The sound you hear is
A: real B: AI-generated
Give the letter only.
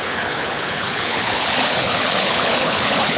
B